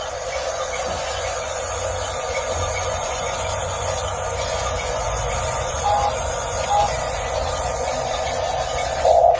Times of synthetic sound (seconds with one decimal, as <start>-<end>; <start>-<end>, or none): 0.0-9.4